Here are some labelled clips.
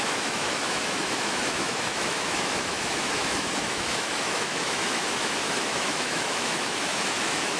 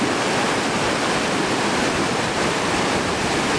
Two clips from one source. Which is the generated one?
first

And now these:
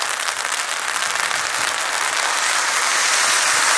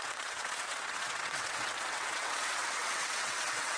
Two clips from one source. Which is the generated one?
second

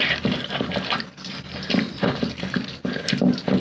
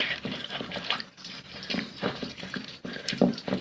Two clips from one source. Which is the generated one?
second